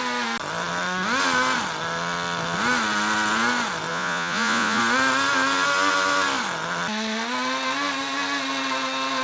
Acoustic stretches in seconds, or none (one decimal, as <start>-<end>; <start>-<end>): 0.0-3.9; 4.8-9.2